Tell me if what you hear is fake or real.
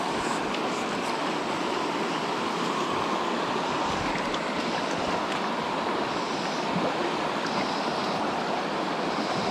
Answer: fake